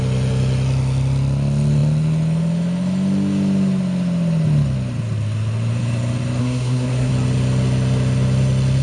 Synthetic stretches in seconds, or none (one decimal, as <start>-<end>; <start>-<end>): 6.4-7.1